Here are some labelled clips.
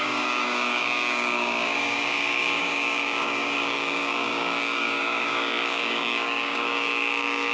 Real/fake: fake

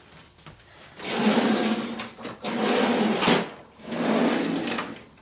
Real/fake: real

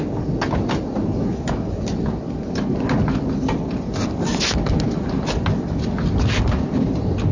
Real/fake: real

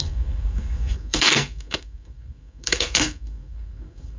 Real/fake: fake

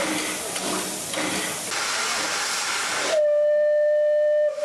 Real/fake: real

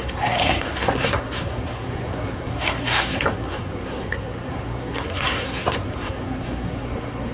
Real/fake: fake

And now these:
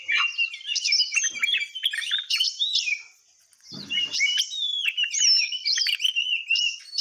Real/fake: real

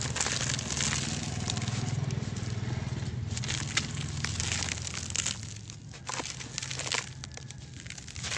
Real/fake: real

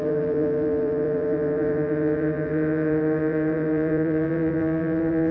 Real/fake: fake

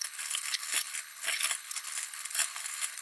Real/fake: fake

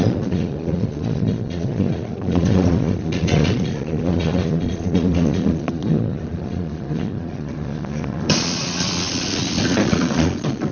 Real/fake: fake